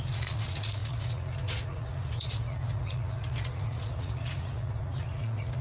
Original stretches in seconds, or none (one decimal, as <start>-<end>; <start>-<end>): none

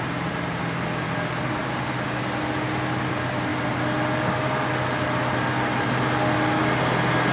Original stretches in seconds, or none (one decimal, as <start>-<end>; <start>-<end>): 0.0-7.3

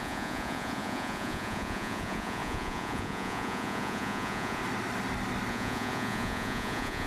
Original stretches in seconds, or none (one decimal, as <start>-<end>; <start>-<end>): 4.6-5.5

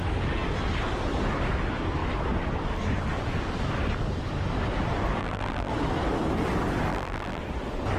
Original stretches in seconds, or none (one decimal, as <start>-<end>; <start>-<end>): 0.0-5.2; 5.7-6.9; 7.4-8.0

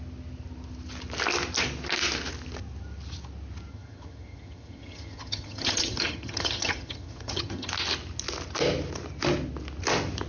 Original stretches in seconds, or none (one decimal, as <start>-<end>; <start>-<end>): 0.0-3.7; 7.7-10.3